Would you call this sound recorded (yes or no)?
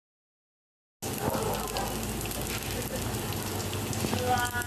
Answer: yes